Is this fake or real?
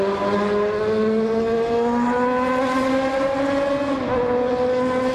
real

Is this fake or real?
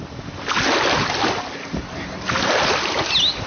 real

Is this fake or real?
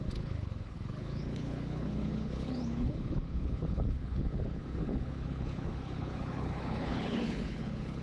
fake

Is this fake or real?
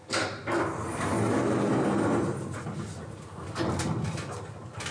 real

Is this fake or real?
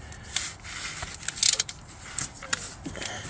real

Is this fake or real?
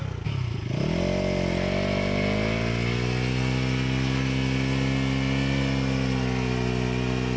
real